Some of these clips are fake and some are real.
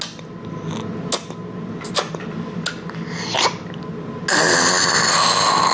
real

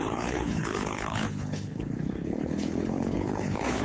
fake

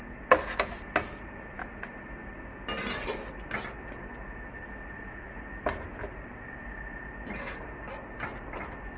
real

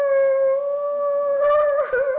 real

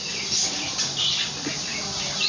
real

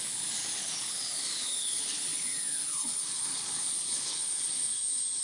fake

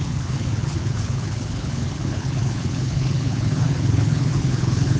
fake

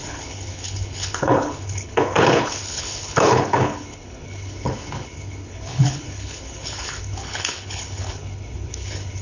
fake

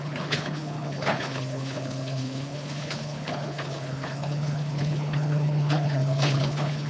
fake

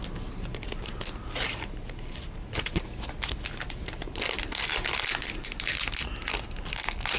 real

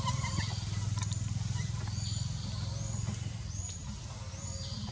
real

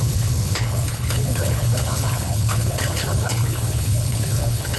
fake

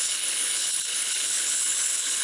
fake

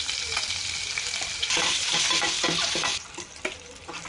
real